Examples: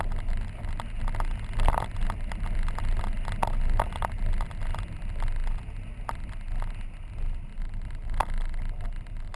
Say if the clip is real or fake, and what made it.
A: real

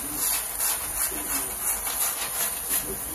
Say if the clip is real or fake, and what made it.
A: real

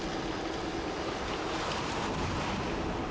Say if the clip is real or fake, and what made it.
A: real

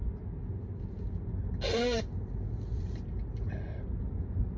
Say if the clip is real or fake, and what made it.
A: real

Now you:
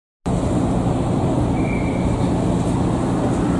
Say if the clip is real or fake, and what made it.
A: real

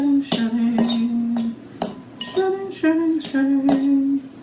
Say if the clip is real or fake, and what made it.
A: real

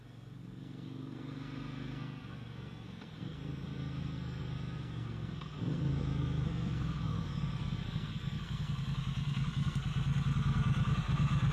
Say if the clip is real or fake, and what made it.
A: fake, codec, SNAC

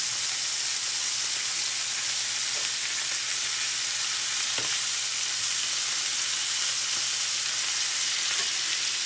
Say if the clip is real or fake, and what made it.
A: real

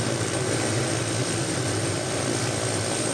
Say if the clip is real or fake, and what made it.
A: real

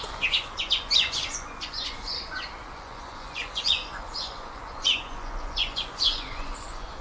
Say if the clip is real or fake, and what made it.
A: fake, vocoder, Vocos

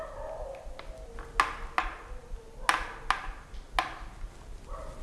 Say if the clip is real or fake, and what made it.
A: real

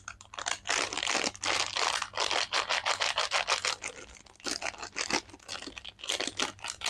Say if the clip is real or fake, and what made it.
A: real